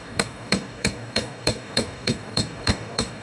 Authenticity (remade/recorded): remade